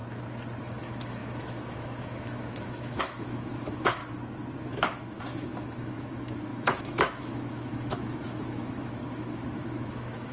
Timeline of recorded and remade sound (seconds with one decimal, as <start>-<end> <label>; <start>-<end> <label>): 0.0-0.6 recorded; 0.6-4.0 remade; 4.0-4.6 recorded; 4.6-10.3 remade